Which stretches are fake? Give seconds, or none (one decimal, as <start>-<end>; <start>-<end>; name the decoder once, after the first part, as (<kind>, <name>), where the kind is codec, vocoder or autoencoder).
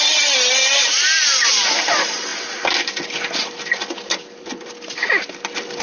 none